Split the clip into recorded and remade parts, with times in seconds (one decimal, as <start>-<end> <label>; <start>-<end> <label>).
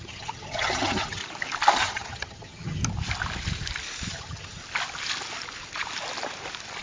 0.0-1.2 remade; 1.2-1.8 recorded; 1.8-2.8 remade; 2.8-4.1 recorded; 4.1-4.6 remade; 4.6-6.8 recorded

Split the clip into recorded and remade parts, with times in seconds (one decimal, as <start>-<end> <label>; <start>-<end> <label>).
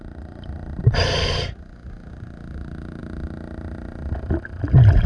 0.0-5.1 recorded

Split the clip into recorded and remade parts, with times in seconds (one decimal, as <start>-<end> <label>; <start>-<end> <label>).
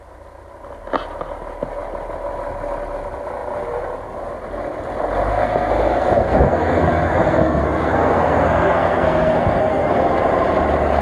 0.0-5.3 recorded; 5.3-10.2 remade; 10.2-11.0 recorded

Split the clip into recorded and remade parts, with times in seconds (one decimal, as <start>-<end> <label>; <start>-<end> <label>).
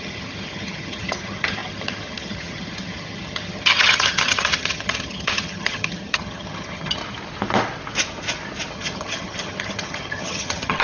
0.0-7.0 remade; 7.0-8.7 recorded; 8.7-10.8 remade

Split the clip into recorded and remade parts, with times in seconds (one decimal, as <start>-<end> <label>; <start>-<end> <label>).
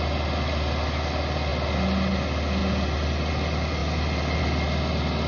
0.0-5.3 recorded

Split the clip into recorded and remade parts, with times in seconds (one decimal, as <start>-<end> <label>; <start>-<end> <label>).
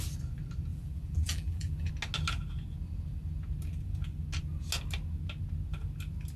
0.0-0.7 recorded; 0.7-1.9 remade; 1.9-6.4 recorded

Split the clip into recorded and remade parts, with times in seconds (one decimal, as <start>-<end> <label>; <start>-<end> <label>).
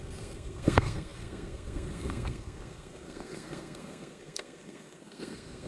0.0-5.7 remade